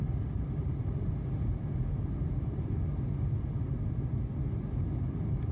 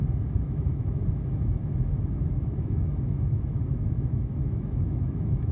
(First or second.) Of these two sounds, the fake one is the second